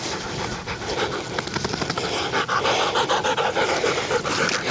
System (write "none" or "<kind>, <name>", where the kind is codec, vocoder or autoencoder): none